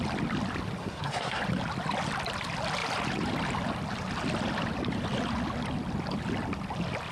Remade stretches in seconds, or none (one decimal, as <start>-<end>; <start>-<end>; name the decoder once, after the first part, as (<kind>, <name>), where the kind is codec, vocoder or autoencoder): 0.8-1.4 (codec, SNAC)